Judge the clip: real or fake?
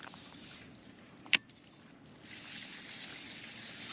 real